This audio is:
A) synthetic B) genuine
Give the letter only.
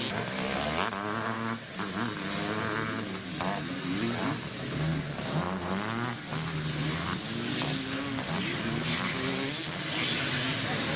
B